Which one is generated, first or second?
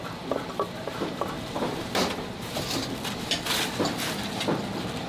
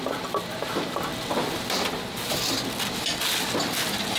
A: first